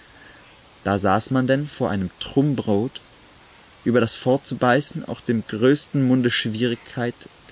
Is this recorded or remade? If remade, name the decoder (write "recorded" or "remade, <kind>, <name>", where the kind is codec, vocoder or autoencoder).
recorded